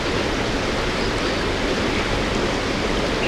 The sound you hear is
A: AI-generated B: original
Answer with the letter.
B